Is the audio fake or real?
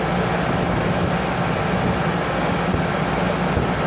real